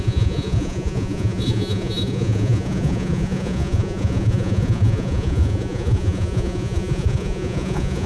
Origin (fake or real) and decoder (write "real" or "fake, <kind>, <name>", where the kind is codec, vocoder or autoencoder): fake, vocoder, Vocos